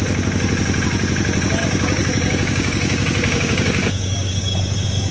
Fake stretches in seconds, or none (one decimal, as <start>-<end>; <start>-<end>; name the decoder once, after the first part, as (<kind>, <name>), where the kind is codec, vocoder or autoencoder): 1.6-5.1 (codec, DAC)